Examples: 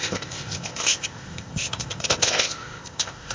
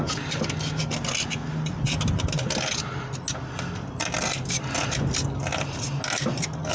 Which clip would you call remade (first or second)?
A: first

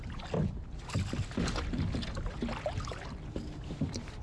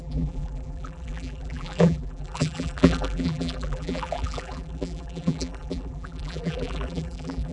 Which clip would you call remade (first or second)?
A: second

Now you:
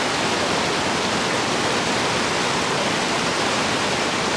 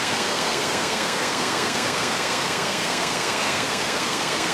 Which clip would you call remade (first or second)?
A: second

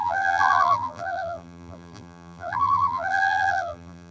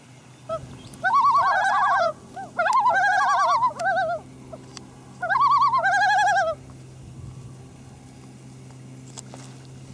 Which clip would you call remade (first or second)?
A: first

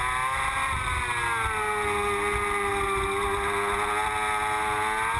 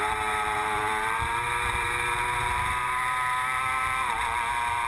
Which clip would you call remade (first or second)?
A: second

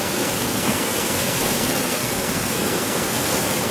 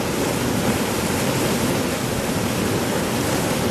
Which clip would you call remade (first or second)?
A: first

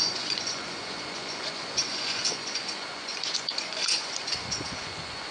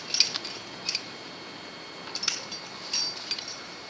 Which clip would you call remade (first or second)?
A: first